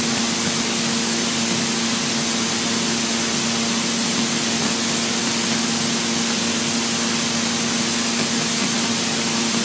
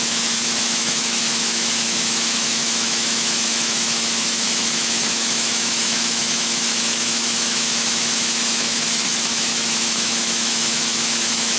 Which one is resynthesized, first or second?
second